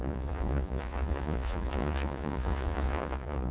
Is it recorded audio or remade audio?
remade